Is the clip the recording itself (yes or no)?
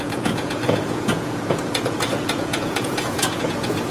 no